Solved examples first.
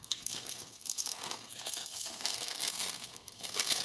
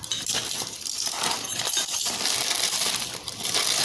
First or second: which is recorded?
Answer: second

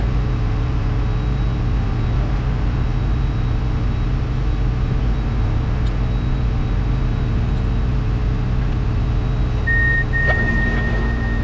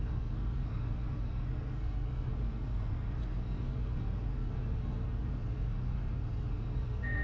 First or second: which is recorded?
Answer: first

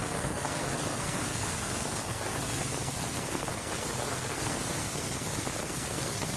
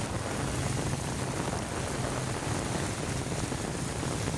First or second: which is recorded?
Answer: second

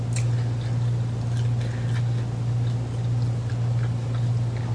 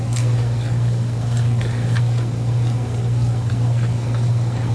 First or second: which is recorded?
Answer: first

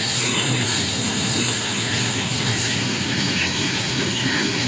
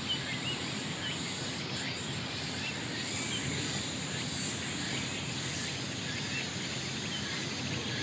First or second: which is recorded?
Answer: second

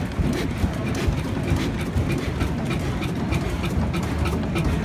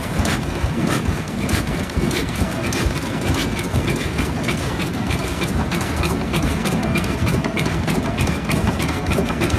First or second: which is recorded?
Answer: first